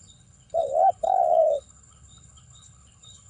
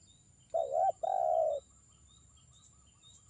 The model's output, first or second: first